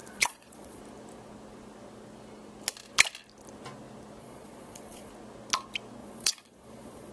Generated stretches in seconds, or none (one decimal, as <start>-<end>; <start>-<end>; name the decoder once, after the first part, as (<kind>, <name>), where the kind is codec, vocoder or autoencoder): 0.0-0.8 (vocoder, Vocos); 4.2-5.1; 6.0-7.1

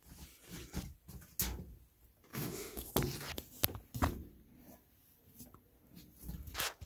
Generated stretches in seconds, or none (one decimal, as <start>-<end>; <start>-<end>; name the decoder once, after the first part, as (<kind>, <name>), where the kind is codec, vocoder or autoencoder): 2.3-2.9 (autoencoder, DAC-VAE)

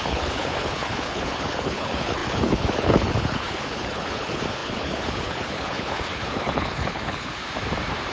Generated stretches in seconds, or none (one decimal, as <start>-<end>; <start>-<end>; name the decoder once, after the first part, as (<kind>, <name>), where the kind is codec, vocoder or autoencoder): 0.0-7.4 (codec, HILCodec)

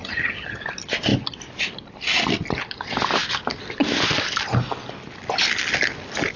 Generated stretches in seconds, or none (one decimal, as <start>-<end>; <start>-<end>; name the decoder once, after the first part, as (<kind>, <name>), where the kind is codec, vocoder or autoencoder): 0.0-0.6 (vocoder, HiFi-GAN)

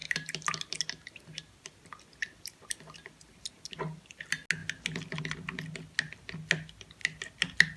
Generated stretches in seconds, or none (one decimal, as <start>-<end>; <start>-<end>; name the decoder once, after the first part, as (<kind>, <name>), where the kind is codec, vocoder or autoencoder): none

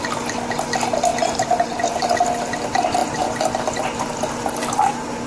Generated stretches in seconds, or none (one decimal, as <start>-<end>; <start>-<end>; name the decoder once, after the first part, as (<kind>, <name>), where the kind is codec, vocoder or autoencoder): 1.1-2.1 (vocoder, BigVGAN v2)